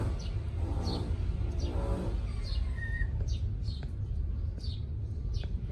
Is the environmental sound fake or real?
real